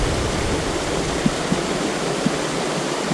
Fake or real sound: fake